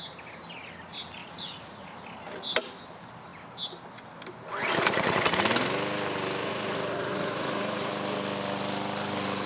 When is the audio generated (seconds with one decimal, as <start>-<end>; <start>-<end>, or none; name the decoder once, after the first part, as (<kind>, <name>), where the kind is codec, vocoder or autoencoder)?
1.2-1.9 (vocoder, Vocos); 6.4-7.9